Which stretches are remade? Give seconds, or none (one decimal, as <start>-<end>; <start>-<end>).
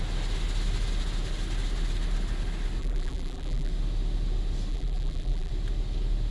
2.8-3.7; 4.7-5.5